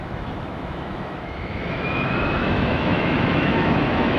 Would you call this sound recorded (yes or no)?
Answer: no